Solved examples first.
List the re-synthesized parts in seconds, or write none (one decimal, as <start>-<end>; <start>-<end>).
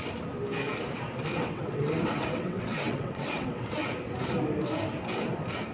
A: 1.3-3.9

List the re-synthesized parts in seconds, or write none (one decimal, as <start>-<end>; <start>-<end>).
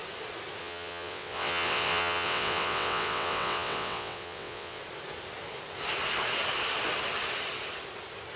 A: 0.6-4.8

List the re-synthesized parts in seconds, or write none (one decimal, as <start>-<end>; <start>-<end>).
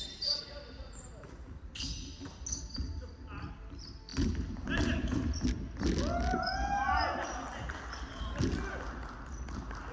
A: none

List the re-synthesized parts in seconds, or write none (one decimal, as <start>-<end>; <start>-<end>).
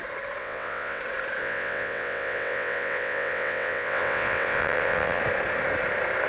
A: 0.4-1.0; 1.4-5.2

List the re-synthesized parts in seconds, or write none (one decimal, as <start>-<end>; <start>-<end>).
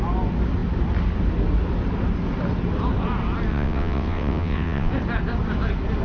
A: 3.5-4.9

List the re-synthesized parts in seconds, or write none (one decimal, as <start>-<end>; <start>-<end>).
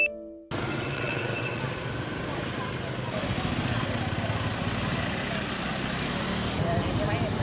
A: 0.7-1.6